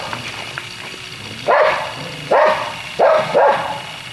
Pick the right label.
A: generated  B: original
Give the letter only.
B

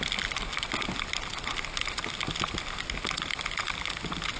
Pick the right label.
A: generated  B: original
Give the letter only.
B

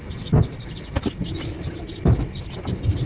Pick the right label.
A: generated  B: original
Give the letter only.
B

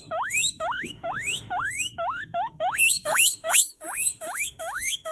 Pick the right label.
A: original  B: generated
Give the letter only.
B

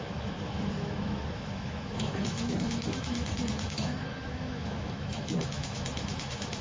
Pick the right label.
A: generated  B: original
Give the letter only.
A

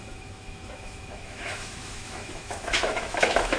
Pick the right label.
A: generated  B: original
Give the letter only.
A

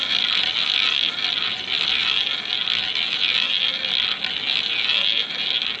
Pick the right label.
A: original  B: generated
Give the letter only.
A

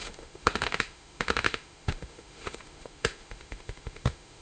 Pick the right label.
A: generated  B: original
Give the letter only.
A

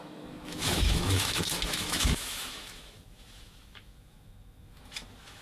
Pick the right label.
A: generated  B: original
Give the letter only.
A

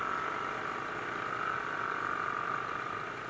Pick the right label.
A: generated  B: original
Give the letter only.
B